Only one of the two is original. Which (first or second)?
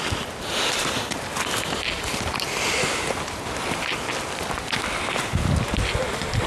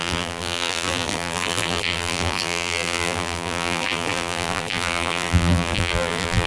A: first